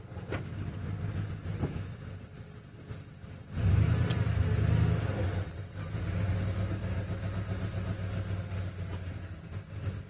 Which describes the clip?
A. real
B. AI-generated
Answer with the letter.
A